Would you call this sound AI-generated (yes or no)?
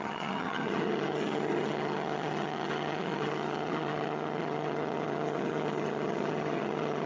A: yes